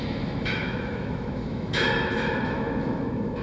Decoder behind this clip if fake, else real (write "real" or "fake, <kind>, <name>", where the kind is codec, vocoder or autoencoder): fake, autoencoder, DAC-VAE